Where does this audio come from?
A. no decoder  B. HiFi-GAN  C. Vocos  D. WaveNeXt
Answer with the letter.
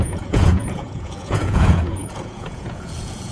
C